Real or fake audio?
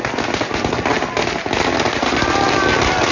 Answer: real